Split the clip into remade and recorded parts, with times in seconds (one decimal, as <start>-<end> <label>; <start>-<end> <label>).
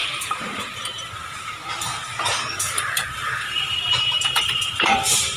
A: 0.0-1.9 remade; 1.9-2.6 recorded; 2.6-5.4 remade